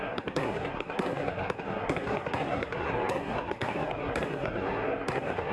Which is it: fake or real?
fake